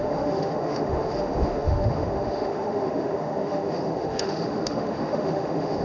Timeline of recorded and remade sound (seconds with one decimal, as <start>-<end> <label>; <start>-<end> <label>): 0.0-5.8 remade